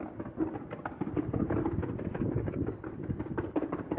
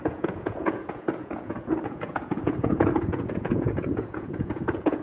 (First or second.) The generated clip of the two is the second